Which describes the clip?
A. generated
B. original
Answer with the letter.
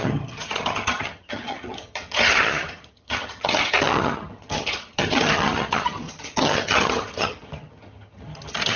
A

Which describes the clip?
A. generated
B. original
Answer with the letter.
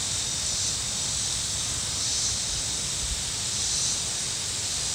B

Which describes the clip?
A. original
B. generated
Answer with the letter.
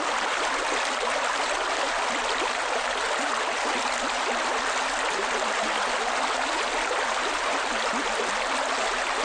A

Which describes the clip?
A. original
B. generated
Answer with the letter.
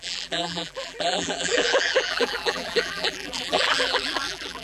B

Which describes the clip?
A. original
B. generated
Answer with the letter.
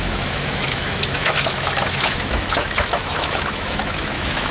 B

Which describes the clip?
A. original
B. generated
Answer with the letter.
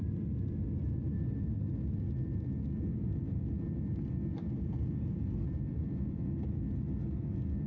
A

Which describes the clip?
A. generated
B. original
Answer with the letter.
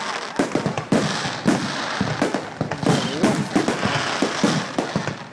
B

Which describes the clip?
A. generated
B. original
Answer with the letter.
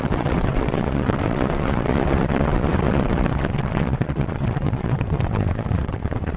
A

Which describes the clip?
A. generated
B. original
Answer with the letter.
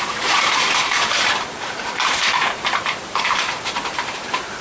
A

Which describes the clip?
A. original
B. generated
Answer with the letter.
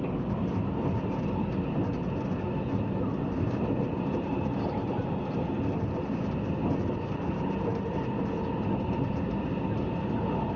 A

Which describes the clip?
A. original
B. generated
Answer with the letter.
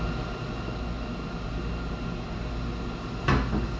A